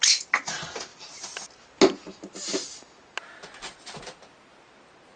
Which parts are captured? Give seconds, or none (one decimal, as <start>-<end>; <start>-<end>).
0.0-5.2